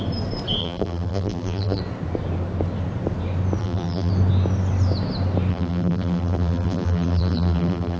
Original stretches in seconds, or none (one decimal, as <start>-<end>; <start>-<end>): 0.0-0.6; 1.8-3.6; 4.1-5.5